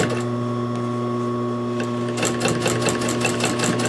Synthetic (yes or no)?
no